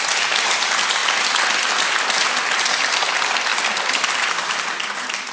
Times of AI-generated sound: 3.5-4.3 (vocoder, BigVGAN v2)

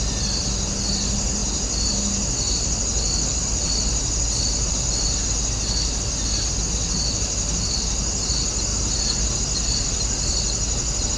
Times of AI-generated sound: none